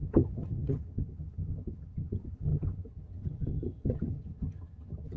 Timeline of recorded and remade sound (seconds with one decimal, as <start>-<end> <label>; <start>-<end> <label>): 0.0-5.2 remade